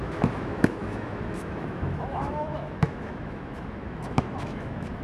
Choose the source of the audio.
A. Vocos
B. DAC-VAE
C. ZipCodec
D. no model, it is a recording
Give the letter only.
B